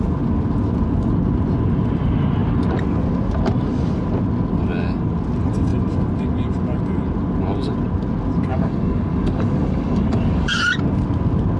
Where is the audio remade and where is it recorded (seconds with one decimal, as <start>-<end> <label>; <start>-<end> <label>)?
0.0-8.5 recorded; 8.5-10.7 remade; 10.7-11.6 recorded